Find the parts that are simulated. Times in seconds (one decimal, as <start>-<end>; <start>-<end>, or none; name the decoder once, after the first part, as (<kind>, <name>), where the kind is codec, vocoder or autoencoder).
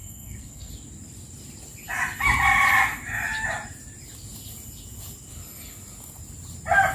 0.0-0.7 (codec, SNAC)